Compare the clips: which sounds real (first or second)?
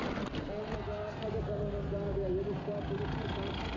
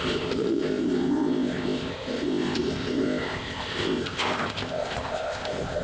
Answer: first